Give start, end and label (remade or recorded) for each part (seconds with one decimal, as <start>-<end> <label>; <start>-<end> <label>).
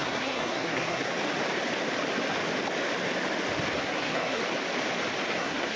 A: 0.0-1.1 remade; 1.1-3.8 recorded; 3.8-4.4 remade; 4.4-5.3 recorded; 5.3-5.8 remade